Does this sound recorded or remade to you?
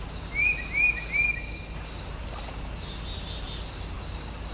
recorded